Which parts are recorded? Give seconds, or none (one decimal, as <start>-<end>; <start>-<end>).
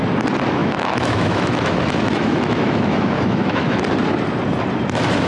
0.0-0.6; 3.8-5.3